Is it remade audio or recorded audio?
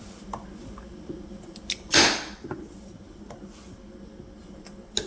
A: recorded